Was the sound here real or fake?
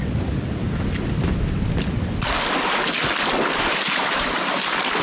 real